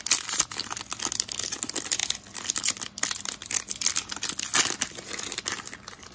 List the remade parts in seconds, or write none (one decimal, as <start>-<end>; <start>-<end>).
none